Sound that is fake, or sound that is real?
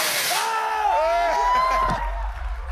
real